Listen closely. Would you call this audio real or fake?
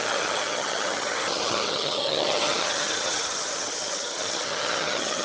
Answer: fake